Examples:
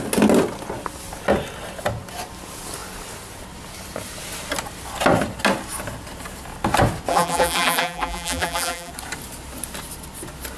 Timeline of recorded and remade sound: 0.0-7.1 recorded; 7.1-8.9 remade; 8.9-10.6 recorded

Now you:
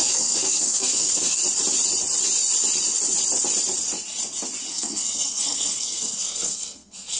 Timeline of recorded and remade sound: 0.0-1.4 remade; 1.4-4.7 recorded; 4.7-7.2 remade

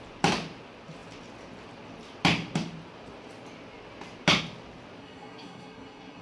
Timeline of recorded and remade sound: 0.0-5.0 recorded; 5.0-6.2 remade

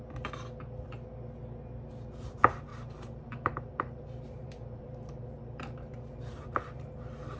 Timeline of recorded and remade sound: 0.0-2.7 recorded; 2.7-7.4 remade